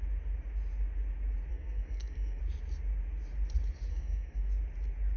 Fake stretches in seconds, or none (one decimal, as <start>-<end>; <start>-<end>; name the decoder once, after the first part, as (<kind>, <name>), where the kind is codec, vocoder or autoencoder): 1.5-2.4 (codec, SNAC); 3.9-4.5